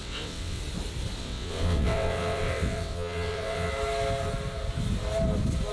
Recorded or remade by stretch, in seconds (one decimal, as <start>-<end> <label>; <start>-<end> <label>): 0.0-0.6 remade; 0.6-1.2 recorded; 1.2-3.7 remade; 3.7-5.7 recorded